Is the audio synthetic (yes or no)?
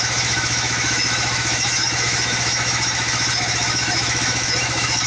yes